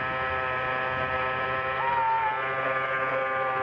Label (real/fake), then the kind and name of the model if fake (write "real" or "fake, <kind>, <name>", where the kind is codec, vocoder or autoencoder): real